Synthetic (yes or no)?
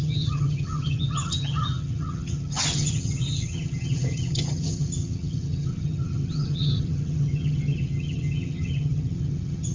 yes